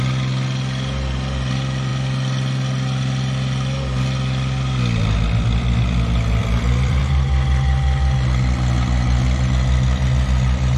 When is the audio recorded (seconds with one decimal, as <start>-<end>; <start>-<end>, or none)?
0.0-6.4; 7.0-10.8